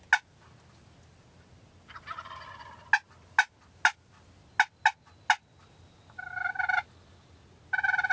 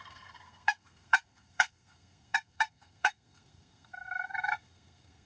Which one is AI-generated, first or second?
second